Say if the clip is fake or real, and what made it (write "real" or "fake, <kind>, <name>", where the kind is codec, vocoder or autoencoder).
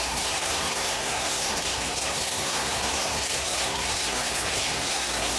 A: fake, codec, SNAC